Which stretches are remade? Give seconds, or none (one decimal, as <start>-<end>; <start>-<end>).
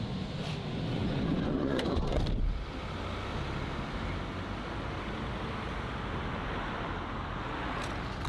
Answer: 1.0-2.2